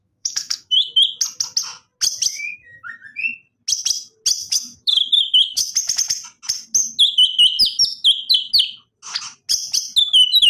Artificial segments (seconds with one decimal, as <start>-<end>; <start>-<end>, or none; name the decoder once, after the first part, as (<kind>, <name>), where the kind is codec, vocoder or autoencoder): 0.0-0.9 (autoencoder, DAC-VAE); 2.3-2.9; 4.4-5.7